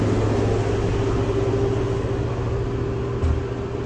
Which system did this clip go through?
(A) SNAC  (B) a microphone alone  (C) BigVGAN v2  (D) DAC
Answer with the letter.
B